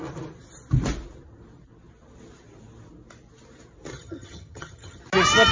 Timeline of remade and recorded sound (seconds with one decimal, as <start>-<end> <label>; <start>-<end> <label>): 0.0-3.9 recorded; 3.9-5.0 remade; 5.0-5.5 recorded